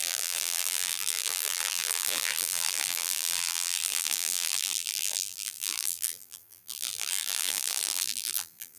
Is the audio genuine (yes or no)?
no